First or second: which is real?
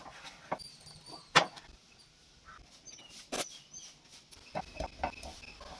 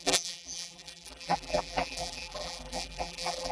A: first